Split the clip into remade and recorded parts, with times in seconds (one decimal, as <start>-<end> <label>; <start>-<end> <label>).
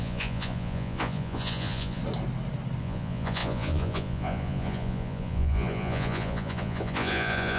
0.0-2.0 remade; 2.0-2.8 recorded; 2.8-7.6 remade